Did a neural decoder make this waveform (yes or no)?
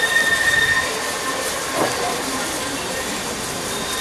yes